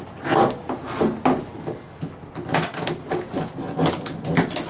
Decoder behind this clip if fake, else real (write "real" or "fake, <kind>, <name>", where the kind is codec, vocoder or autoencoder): real